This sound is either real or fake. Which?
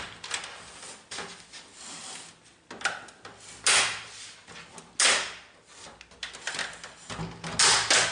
real